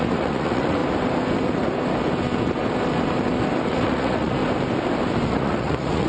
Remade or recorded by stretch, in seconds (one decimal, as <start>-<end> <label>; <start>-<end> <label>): 0.0-0.8 remade; 0.8-3.7 recorded; 3.7-4.4 remade; 4.4-5.3 recorded; 5.3-6.1 remade